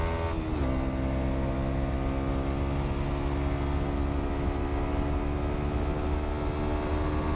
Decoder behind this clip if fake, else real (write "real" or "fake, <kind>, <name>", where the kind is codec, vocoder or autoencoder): real